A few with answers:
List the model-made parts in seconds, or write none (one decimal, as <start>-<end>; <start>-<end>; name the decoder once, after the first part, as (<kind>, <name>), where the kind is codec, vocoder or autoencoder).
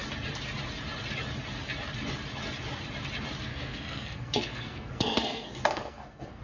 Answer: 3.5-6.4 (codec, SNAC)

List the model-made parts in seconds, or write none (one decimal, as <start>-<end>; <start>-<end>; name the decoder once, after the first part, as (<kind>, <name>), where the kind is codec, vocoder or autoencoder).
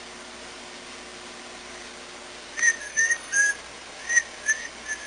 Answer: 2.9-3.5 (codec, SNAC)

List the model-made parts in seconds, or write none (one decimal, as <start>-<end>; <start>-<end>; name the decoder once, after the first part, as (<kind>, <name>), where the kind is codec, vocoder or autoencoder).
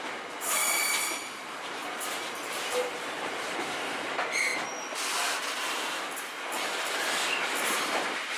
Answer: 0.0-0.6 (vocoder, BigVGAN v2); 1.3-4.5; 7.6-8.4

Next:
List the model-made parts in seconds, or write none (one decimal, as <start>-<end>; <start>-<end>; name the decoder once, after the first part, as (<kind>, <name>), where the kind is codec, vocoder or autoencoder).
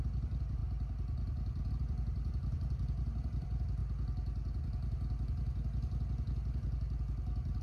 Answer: 0.0-0.6 (vocoder, BigVGAN v2); 1.7-3.8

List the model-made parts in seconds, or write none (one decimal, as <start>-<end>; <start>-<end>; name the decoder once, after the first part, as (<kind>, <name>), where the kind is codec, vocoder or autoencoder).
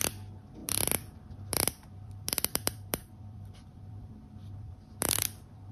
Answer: 0.0-5.7 (vocoder, BigVGAN v2)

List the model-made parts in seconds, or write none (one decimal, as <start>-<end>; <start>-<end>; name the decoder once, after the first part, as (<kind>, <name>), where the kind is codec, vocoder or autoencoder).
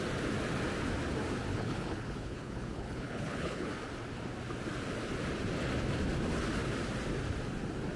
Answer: 1.5-3.7 (codec, HILCodec)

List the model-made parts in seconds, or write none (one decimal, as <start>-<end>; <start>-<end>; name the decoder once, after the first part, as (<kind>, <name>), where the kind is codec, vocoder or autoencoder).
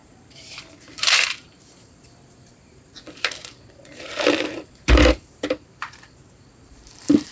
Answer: 0.0-7.3 (vocoder, BigVGAN v2)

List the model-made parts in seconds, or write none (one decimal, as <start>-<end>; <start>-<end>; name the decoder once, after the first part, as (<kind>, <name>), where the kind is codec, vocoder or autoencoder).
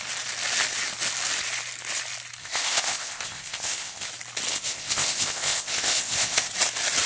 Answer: 2.4-4.1 (codec, ZipCodec); 4.5-6.5